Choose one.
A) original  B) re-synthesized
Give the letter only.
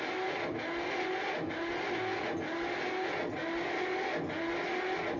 A